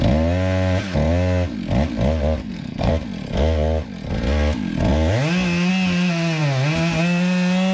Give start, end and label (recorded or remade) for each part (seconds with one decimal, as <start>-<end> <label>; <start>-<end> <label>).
0.0-2.4 recorded; 2.4-2.9 remade; 2.9-7.7 recorded